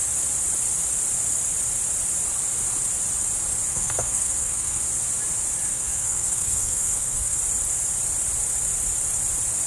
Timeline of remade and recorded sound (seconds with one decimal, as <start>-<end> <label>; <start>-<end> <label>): 0.0-3.7 recorded; 3.7-4.8 remade; 4.8-5.7 recorded; 5.7-7.4 remade; 7.4-9.7 recorded